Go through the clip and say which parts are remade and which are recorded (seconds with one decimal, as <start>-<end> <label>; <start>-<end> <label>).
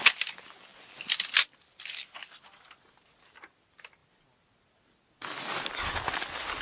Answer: 0.0-6.6 recorded